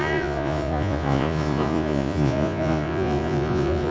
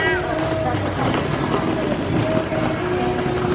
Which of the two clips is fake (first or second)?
first